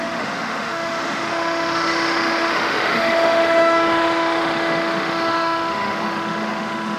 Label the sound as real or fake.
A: fake